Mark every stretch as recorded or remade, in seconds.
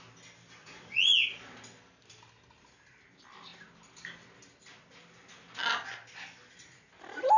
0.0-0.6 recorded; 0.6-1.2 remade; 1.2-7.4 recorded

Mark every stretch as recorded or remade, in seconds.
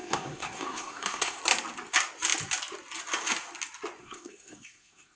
0.0-1.4 remade; 1.4-4.0 recorded; 4.0-5.2 remade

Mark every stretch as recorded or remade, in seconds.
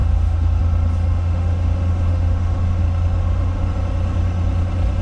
0.0-0.6 remade; 0.6-1.1 recorded; 1.1-2.8 remade; 2.8-3.2 recorded; 3.2-3.7 remade; 3.7-5.0 recorded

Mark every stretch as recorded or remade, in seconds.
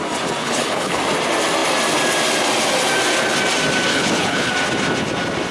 0.0-0.4 recorded; 0.4-1.0 remade; 1.0-3.9 recorded; 3.9-4.5 remade; 4.5-5.5 recorded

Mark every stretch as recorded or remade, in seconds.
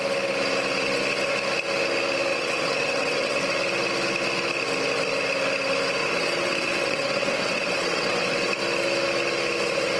0.0-2.3 recorded; 2.3-3.4 remade; 3.4-6.0 recorded; 6.0-8.5 remade; 8.5-10.0 recorded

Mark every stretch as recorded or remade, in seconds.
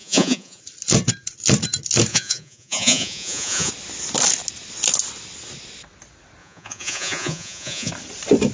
0.0-0.6 remade; 0.6-2.1 recorded; 2.1-3.7 remade; 3.7-6.4 recorded; 6.4-7.9 remade; 7.9-8.5 recorded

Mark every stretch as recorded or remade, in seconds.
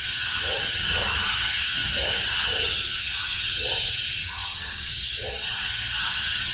0.0-6.5 remade